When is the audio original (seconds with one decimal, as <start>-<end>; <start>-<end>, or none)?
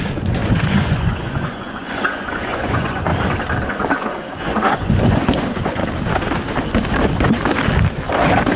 3.1-3.7; 5.8-8.6